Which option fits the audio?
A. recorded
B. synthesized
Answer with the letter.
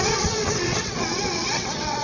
B